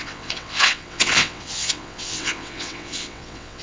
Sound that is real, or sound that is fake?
fake